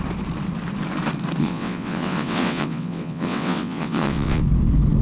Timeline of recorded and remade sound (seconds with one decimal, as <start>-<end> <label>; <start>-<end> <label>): 0.0-1.4 recorded; 1.4-4.4 remade; 4.4-5.0 recorded